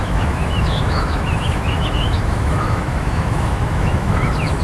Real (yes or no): no